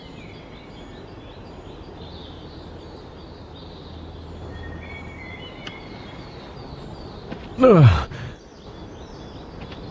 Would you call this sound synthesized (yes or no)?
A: no